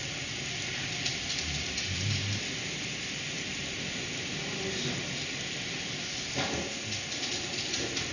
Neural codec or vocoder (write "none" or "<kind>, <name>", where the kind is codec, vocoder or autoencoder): none